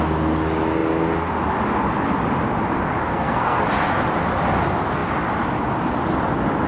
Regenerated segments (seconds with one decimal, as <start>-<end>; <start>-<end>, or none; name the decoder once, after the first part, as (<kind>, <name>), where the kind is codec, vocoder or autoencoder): 3.1-3.6 (codec, SNAC)